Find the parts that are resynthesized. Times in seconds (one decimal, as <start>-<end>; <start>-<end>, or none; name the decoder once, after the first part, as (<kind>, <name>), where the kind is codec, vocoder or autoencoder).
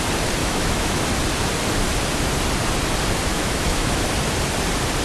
0.4-1.0 (autoencoder, DAC-VAE); 3.3-4.0